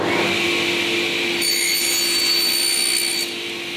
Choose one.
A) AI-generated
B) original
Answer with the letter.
B